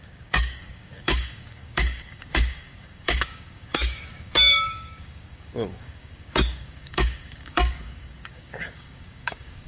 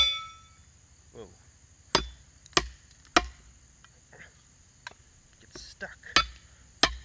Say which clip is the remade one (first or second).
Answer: first